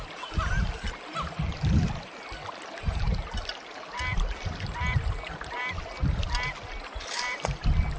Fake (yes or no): no